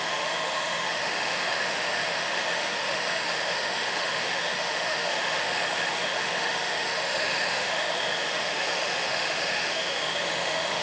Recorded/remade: remade